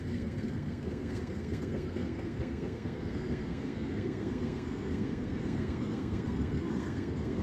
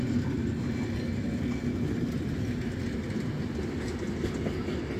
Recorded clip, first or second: second